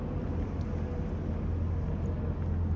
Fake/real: real